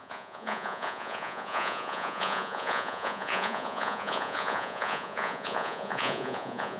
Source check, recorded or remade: remade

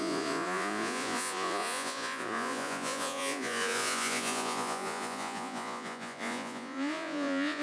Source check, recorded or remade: remade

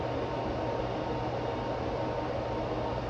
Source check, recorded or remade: recorded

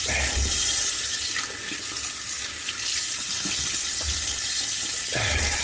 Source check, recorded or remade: recorded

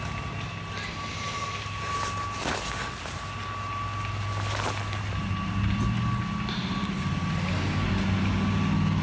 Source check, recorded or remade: recorded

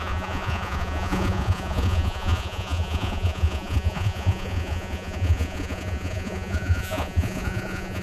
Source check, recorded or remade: remade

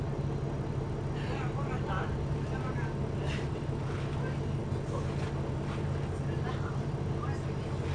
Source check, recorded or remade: recorded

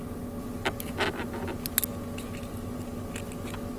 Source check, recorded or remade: recorded